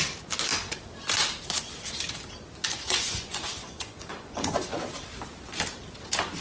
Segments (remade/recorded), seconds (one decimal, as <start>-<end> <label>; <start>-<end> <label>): 0.0-2.6 recorded; 2.6-4.8 remade; 4.8-6.4 recorded